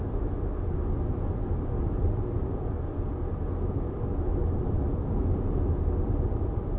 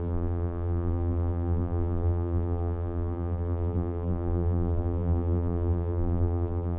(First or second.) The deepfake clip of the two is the second